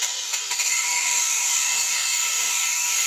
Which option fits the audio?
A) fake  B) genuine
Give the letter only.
A